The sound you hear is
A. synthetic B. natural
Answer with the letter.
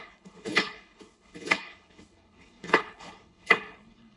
A